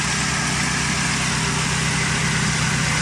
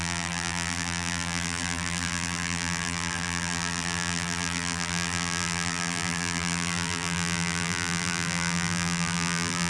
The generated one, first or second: second